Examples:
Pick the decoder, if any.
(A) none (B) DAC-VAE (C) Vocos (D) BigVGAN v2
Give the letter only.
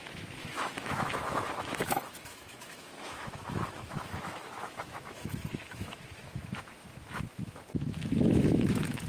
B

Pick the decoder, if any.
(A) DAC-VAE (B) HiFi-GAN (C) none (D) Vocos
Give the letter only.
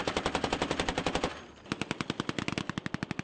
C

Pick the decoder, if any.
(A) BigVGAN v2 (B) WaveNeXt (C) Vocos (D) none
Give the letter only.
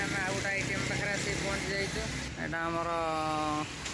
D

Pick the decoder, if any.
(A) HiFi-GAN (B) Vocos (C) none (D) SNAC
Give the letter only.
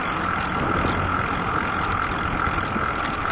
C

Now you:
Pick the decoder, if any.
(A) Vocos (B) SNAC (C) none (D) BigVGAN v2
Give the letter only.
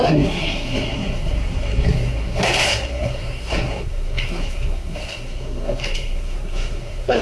B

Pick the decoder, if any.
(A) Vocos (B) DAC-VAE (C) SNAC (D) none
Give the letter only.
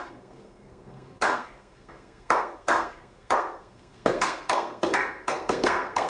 C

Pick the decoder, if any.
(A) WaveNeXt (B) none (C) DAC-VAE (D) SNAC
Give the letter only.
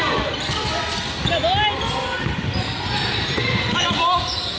B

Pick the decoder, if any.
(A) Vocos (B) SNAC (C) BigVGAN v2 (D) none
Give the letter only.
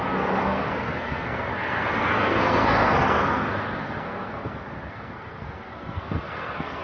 B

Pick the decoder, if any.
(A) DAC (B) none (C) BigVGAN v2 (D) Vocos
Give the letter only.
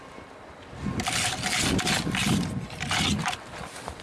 B